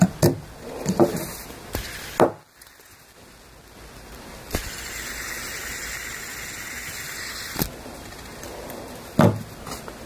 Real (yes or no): yes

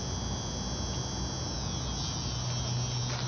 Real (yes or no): yes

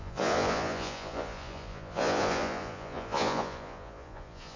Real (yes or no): no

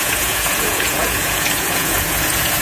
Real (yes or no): no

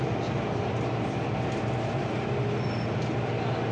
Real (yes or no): yes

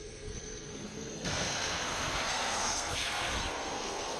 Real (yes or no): no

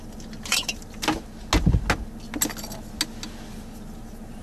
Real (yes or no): yes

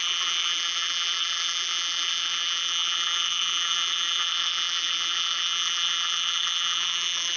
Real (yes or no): no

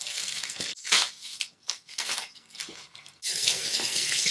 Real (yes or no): no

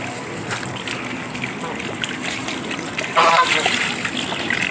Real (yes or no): yes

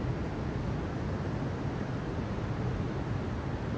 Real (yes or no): yes